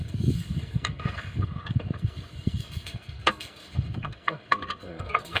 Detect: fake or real fake